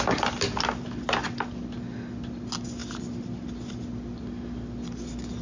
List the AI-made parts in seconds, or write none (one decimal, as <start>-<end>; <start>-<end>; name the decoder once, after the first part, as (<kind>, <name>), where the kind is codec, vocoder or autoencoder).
none